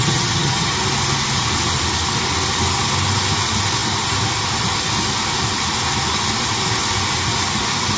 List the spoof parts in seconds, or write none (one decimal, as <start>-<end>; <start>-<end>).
0.0-0.7